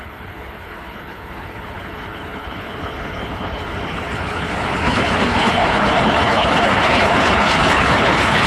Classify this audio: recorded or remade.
remade